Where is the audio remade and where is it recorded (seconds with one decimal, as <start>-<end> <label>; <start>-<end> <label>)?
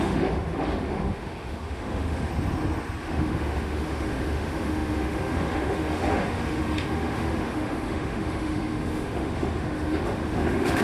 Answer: 0.0-2.3 remade; 2.3-3.0 recorded; 3.0-10.8 remade